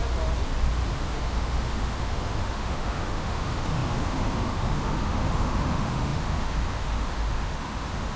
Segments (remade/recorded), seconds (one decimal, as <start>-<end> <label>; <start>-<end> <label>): 0.0-0.9 recorded; 0.9-8.2 remade